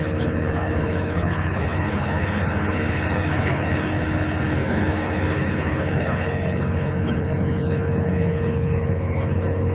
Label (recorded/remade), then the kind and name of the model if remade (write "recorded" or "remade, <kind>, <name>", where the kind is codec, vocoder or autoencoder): remade, codec, HILCodec